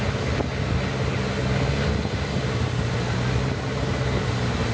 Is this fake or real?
real